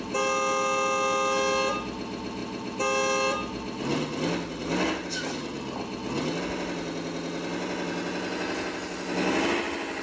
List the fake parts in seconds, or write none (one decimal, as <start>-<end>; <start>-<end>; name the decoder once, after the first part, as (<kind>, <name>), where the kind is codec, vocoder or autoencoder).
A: none